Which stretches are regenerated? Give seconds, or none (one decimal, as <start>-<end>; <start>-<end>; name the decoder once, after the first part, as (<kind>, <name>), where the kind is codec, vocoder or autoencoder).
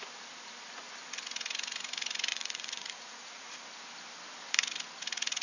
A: 2.3-3.6 (vocoder, Vocos)